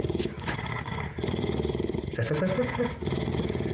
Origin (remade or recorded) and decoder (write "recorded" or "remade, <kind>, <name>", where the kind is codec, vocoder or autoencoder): remade, vocoder, Vocos